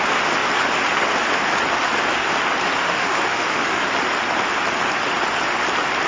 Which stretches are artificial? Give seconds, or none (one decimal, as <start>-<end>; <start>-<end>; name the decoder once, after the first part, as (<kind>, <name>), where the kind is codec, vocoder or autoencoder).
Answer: 2.8-3.8 (autoencoder, DAC-VAE)